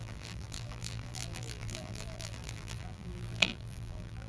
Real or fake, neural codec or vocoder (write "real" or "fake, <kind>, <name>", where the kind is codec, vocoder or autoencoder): fake, vocoder, BigVGAN v2